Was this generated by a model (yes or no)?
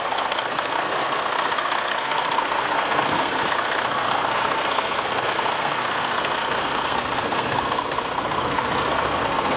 yes